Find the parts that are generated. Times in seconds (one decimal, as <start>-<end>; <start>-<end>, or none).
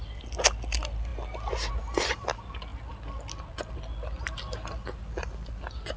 none